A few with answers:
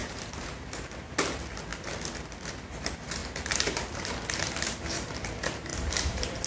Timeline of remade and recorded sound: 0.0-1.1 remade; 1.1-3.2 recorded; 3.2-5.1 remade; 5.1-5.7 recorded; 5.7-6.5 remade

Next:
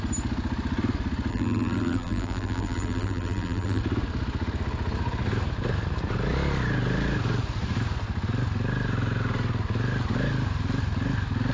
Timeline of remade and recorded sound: 0.0-1.3 recorded; 1.3-3.8 remade; 3.8-11.5 recorded

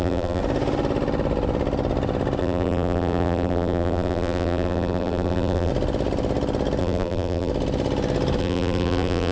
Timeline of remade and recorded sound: 0.0-0.4 remade; 0.4-2.4 recorded; 2.4-5.7 remade; 5.7-6.8 recorded; 6.8-7.5 remade; 7.5-8.4 recorded; 8.4-9.3 remade

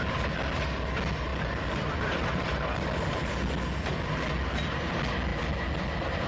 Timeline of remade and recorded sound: 0.0-1.3 recorded; 1.3-3.6 remade; 3.6-6.3 recorded

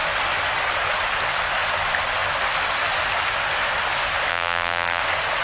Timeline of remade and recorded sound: 0.0-4.3 recorded; 4.3-5.0 remade; 5.0-5.4 recorded

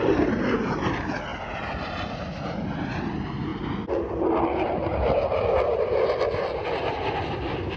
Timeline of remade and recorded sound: 0.0-7.8 recorded